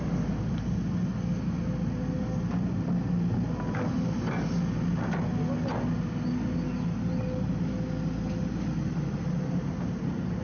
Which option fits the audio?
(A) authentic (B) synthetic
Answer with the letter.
A